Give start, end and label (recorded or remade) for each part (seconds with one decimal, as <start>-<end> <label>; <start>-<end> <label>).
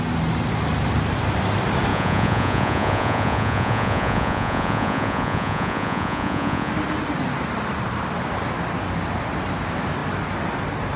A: 0.0-1.9 recorded; 1.9-6.7 remade; 6.7-11.0 recorded